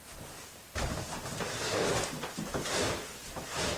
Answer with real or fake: fake